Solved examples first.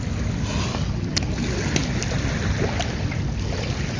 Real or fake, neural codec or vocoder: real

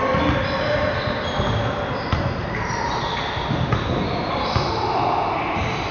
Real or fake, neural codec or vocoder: real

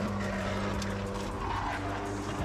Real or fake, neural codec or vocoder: real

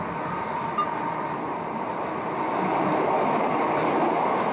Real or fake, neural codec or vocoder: real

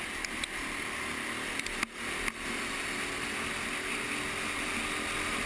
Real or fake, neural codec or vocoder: real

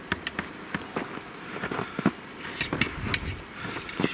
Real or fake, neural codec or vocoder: real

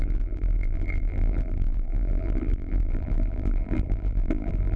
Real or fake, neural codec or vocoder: fake, vocoder, BigVGAN v2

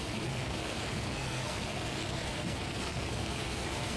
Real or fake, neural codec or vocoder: fake, codec, SNAC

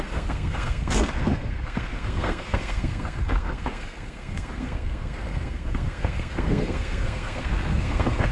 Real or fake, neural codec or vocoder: fake, codec, SNAC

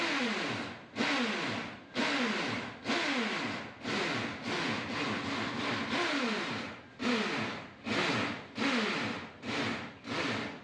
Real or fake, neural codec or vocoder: real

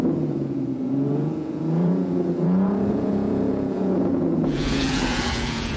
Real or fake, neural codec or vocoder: fake, vocoder, Vocos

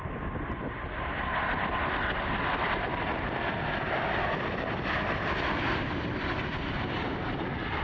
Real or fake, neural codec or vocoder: real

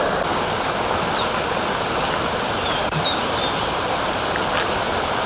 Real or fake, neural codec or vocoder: real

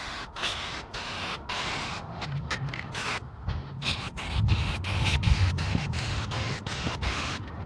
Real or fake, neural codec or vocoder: fake, autoencoder, DAC-VAE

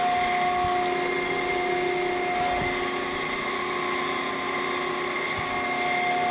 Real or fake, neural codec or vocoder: real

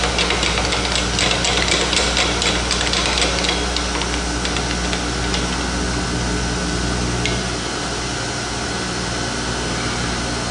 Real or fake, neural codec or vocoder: real